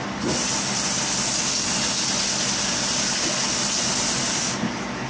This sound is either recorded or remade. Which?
recorded